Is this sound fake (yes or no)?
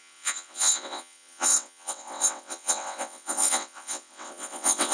yes